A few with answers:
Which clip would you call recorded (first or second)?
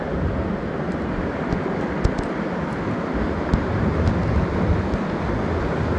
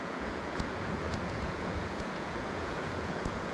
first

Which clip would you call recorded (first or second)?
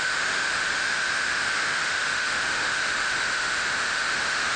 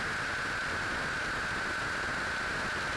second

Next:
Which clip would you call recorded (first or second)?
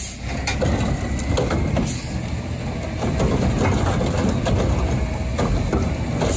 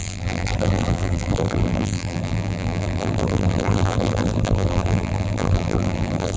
first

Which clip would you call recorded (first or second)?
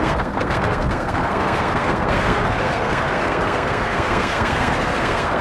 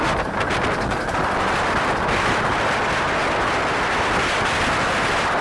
second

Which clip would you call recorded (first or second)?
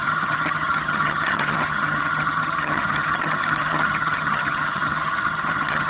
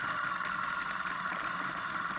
second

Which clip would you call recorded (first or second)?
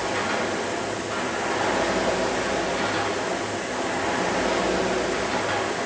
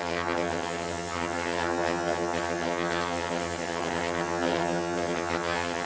first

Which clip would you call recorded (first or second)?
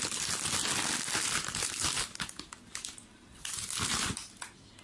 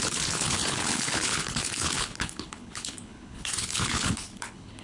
first